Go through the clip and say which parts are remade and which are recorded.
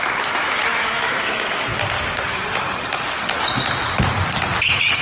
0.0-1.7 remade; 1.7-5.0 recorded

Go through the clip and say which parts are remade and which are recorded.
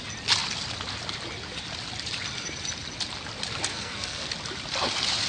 0.0-3.7 recorded; 3.7-4.3 remade; 4.3-5.3 recorded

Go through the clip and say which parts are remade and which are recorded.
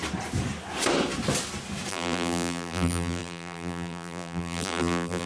0.0-1.9 recorded; 1.9-5.3 remade